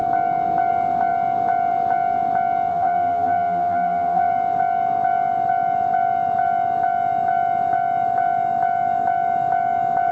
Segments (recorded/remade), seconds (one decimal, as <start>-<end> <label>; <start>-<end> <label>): 0.0-2.7 recorded; 2.7-4.3 remade; 4.3-10.1 recorded